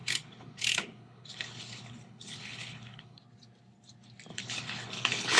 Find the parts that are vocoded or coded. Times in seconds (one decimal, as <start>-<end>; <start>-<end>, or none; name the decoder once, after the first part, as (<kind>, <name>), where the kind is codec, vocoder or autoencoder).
0.0-3.2 (codec, HILCodec); 4.3-5.4